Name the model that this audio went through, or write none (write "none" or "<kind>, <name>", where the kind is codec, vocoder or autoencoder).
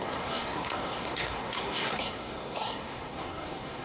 codec, SNAC